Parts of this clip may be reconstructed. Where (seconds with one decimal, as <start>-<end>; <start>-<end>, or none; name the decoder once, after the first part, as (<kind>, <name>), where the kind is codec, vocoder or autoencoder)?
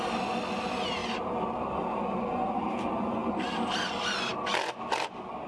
none